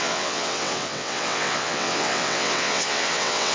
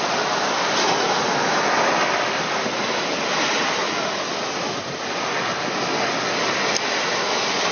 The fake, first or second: first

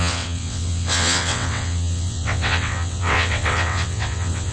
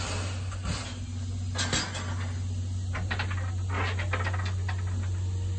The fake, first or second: first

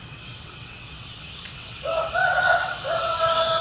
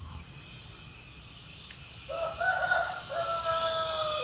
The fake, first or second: first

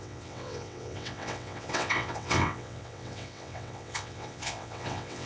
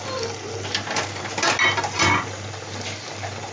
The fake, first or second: first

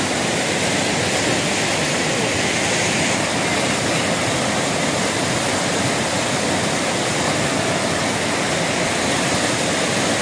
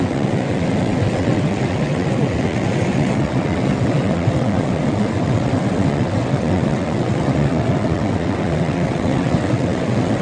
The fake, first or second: second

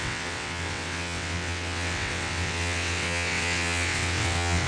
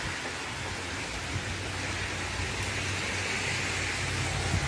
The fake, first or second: first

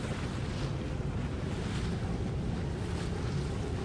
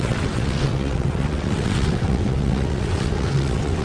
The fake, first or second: second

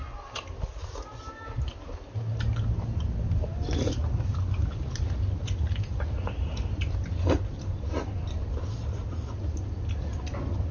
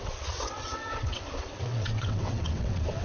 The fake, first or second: second